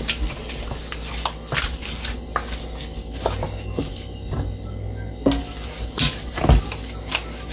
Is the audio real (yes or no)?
yes